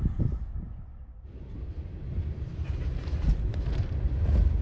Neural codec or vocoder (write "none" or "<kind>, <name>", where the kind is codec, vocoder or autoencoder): none